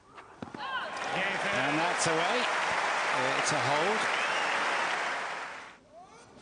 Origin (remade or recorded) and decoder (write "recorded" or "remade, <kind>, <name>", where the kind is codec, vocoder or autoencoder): recorded